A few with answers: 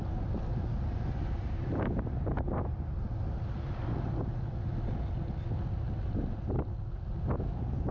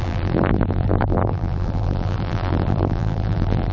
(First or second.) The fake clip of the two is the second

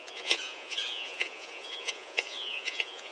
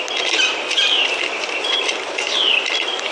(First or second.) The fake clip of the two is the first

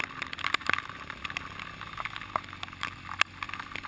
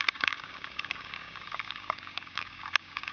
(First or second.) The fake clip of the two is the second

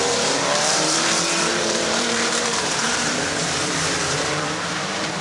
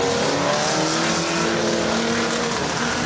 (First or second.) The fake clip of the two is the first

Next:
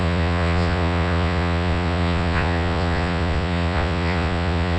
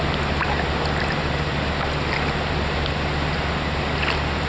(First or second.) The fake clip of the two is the first